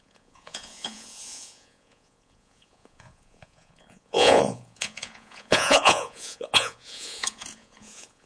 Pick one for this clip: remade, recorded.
remade